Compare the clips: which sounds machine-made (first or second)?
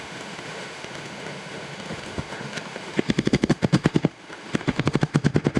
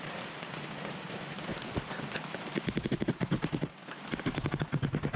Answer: first